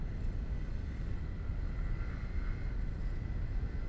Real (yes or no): yes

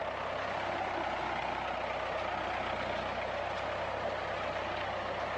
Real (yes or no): yes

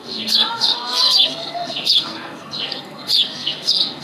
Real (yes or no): no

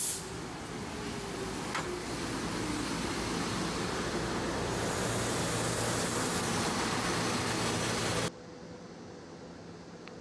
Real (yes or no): yes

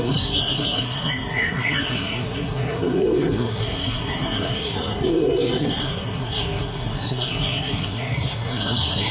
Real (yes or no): no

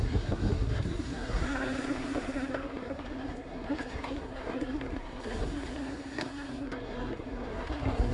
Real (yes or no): no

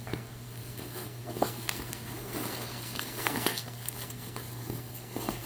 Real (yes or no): no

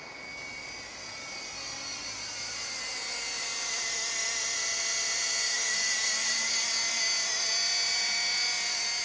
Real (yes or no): yes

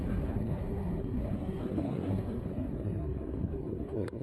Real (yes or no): no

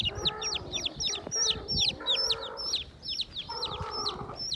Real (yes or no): yes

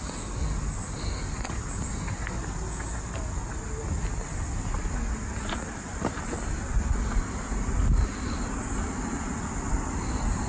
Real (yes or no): yes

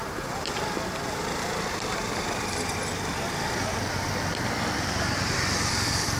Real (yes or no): yes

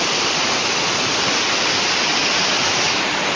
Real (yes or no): yes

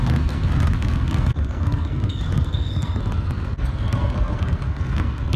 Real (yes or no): no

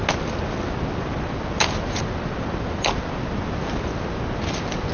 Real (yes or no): yes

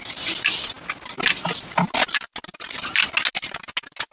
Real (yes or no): yes